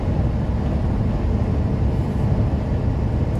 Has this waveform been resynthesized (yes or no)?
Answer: no